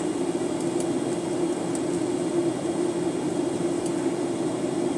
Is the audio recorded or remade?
recorded